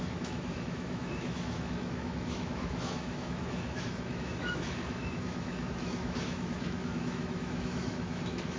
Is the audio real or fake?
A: fake